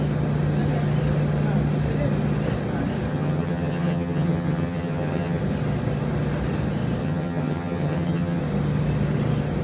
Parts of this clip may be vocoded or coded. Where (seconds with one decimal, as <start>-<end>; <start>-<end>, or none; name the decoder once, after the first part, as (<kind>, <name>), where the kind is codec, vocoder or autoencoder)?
3.1-5.4 (vocoder, HiFi-GAN); 7.0-8.4